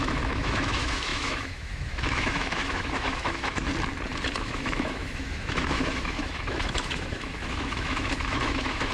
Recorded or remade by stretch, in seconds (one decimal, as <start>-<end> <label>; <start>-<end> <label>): 0.0-3.7 remade; 3.7-4.4 recorded; 4.4-8.9 remade